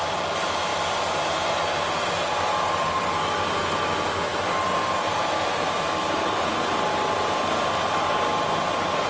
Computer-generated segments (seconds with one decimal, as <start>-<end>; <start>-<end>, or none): none